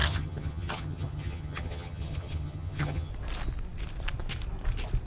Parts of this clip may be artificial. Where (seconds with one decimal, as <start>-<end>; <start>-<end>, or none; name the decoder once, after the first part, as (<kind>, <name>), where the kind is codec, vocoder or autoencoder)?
0.0-3.1 (vocoder, HiFi-GAN)